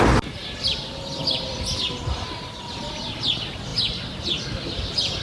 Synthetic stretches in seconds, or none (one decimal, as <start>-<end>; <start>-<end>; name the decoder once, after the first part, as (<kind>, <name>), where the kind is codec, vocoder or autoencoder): none